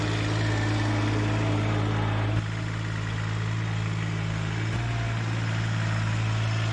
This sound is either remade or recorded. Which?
recorded